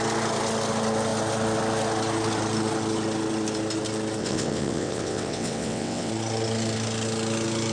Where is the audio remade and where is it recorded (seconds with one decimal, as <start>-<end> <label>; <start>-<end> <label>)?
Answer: 0.0-4.2 recorded; 4.2-6.1 remade; 6.1-7.7 recorded